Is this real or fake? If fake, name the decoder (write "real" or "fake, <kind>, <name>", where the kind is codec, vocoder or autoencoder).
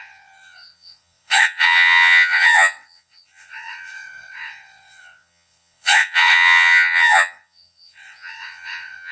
fake, vocoder, WaveNeXt